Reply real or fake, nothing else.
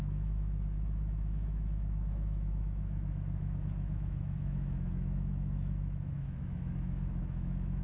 fake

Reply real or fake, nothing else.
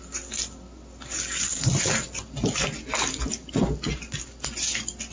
real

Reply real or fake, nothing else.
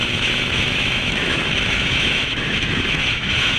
fake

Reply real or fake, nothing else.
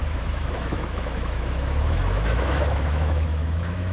fake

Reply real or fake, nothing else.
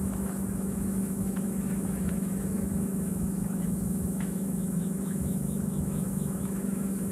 fake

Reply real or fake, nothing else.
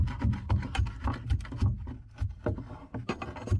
real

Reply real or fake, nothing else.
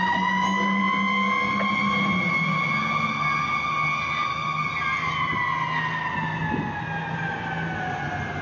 real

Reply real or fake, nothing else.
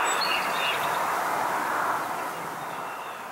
real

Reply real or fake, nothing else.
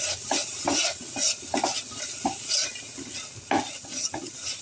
real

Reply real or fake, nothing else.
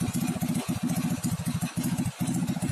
real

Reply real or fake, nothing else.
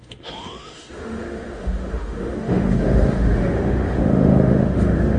fake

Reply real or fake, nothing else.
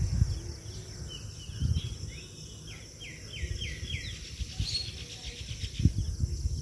real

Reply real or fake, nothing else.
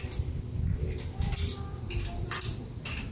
real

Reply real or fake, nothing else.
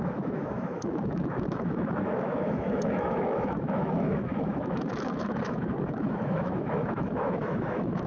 fake